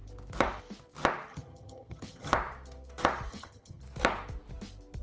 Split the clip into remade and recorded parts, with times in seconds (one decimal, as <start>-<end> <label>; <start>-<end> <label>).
0.0-1.3 recorded; 1.3-2.3 remade; 2.3-3.3 recorded; 3.3-3.8 remade; 3.8-5.0 recorded